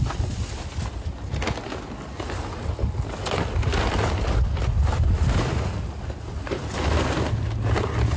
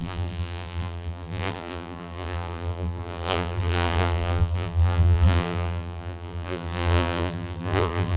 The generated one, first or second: second